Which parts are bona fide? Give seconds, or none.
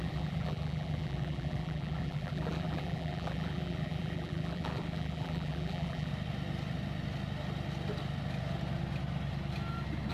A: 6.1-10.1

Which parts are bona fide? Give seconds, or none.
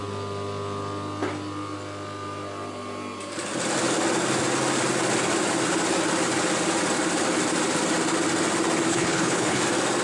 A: 0.0-8.9; 9.6-10.0